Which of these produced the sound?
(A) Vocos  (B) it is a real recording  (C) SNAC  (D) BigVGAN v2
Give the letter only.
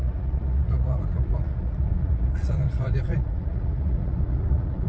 A